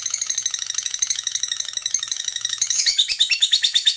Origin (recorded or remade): remade